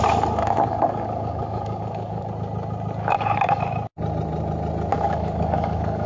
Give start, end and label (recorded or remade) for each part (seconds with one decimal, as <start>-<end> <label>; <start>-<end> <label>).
0.0-0.4 recorded; 0.4-2.3 remade; 2.3-3.0 recorded; 3.0-3.6 remade; 3.6-4.9 recorded; 4.9-6.1 remade